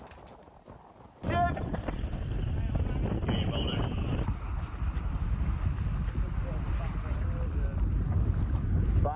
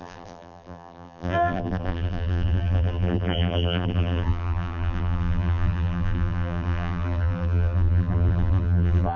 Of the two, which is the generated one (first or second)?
second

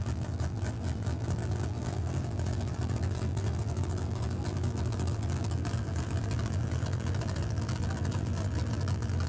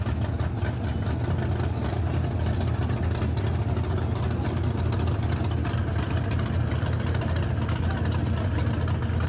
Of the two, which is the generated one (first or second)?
first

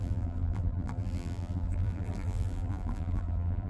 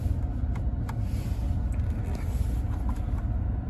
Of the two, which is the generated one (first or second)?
first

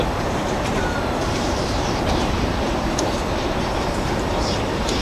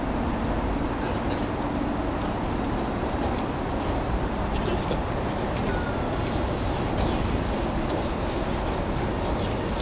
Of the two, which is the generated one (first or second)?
first